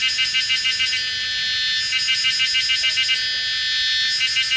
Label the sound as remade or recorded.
recorded